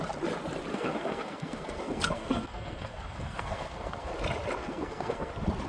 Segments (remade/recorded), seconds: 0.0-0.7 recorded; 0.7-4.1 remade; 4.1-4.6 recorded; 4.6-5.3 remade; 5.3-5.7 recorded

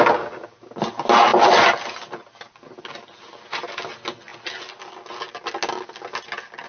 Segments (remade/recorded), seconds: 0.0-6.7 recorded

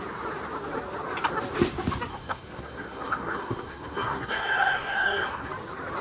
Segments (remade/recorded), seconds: 0.0-2.1 recorded; 2.1-5.5 remade; 5.5-6.0 recorded